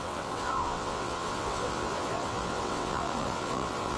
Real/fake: fake